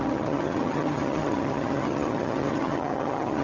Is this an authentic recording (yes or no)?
no